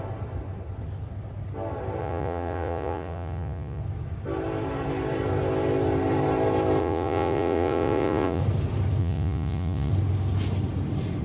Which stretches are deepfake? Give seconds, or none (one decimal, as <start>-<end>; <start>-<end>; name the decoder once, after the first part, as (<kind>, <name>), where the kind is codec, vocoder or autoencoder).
2.0-3.8 (vocoder, Vocos); 6.8-8.4; 9.0-9.9